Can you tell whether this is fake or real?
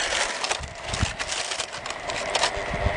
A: real